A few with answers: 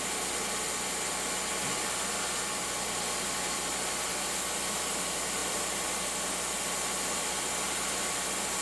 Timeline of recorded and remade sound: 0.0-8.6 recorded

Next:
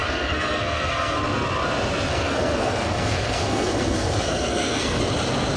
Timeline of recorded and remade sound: 0.0-1.2 remade; 1.2-2.1 recorded; 2.1-5.0 remade; 5.0-5.6 recorded

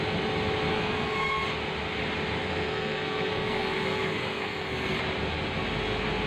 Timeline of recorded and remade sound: 0.0-0.7 recorded; 0.7-1.4 remade; 1.4-2.4 recorded; 2.4-5.0 remade; 5.0-6.3 recorded

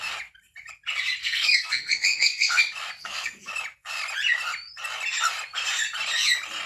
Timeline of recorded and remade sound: 0.0-1.2 recorded; 1.2-2.6 remade; 2.6-3.0 recorded; 3.0-3.5 remade; 3.5-6.7 recorded

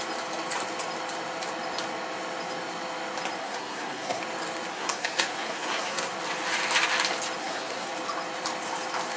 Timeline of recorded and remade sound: 0.0-3.4 recorded; 3.4-4.2 remade; 4.2-4.7 recorded; 4.7-6.1 remade; 6.1-7.4 recorded; 7.4-7.9 remade; 7.9-9.2 recorded

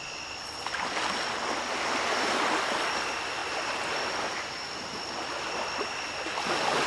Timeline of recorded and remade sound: 0.0-6.9 recorded

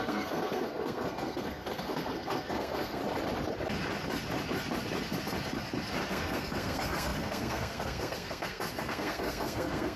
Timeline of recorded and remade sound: 0.0-3.0 remade; 3.0-6.1 recorded; 6.1-10.0 remade